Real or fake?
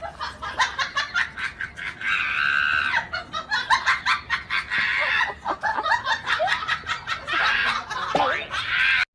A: real